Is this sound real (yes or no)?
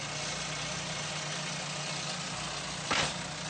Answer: yes